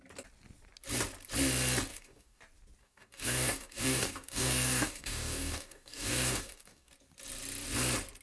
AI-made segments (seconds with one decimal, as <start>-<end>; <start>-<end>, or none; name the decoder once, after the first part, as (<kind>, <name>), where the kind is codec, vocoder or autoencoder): 1.9-2.4 (codec, DAC); 2.8-6.9